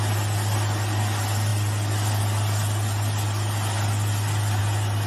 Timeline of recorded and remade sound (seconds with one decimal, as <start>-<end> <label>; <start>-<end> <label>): 0.0-5.1 recorded